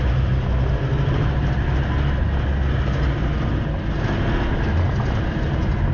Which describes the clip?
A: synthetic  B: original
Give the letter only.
B